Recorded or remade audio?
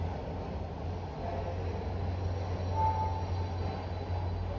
recorded